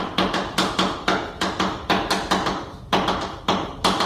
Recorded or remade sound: recorded